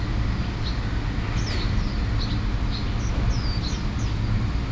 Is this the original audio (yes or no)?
yes